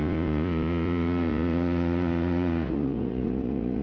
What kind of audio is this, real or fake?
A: fake